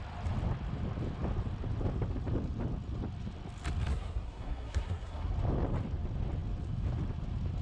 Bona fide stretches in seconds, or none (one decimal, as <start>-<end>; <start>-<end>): 0.0-3.9; 5.3-7.6